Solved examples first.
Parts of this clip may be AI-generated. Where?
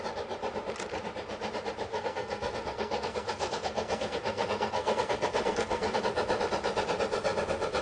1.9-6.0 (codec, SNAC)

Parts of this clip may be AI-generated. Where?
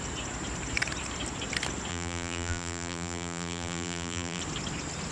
1.9-4.4 (vocoder, BigVGAN v2)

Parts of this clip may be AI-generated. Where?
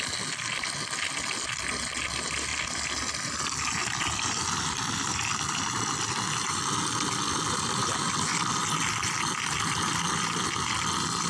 2.5-3.4 (vocoder, BigVGAN v2); 3.8-8.1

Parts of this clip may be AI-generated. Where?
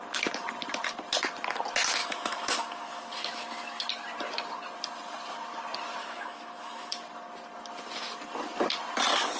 2.0-3.8 (autoencoder, DAC-VAE); 6.0-6.9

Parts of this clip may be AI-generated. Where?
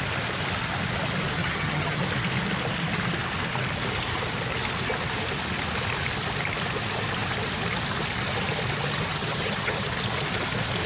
1.4-2.0 (vocoder, HiFi-GAN); 9.1-9.9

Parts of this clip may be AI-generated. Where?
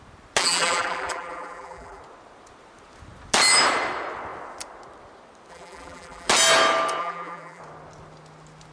0.4-2.0 (vocoder, BigVGAN v2); 5.5-6.3; 7.0-7.6